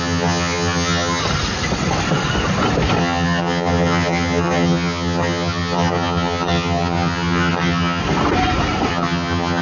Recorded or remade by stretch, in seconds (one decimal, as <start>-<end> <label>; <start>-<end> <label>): 0.0-1.2 remade; 1.2-3.0 recorded; 3.0-8.0 remade; 8.0-8.9 recorded; 8.9-9.6 remade